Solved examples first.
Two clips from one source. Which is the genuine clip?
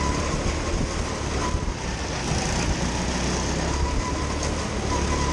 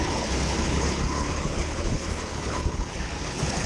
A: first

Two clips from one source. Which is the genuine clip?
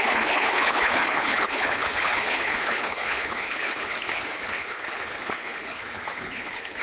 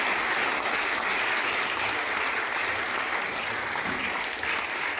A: second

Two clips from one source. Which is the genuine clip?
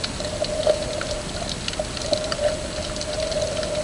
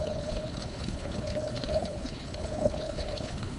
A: first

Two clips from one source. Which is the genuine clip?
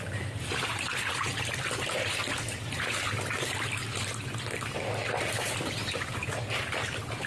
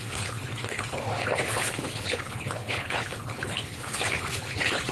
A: first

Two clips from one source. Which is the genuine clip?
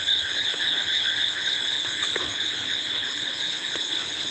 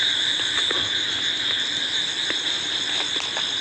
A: second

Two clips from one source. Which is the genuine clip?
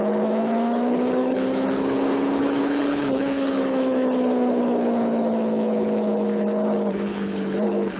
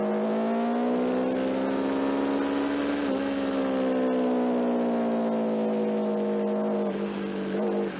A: second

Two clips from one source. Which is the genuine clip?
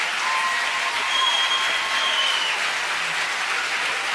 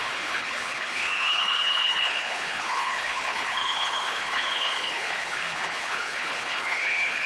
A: first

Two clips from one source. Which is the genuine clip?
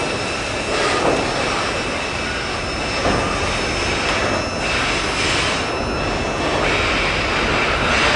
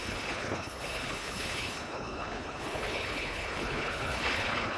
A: first